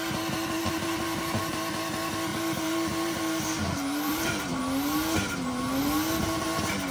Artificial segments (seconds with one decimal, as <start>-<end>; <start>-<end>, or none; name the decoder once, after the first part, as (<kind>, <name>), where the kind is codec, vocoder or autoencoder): 0.6-1.4 (vocoder, BigVGAN v2); 2.3-4.6